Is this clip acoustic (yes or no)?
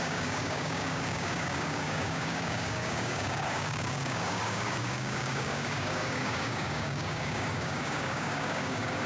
no